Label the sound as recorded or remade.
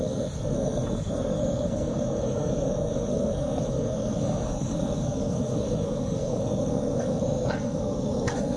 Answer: remade